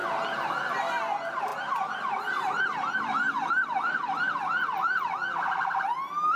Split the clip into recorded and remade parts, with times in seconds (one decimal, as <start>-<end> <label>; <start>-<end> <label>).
0.0-6.4 recorded